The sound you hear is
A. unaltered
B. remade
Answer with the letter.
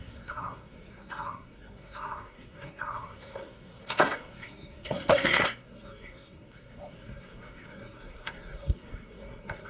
B